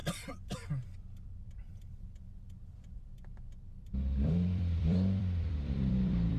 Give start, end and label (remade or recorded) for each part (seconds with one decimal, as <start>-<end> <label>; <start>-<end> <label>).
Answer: 0.0-1.8 recorded; 1.8-6.4 remade